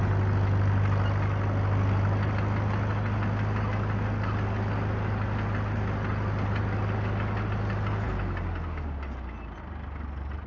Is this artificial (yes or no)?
no